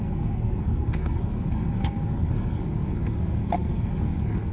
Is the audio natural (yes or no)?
no